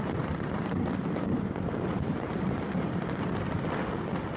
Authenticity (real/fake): real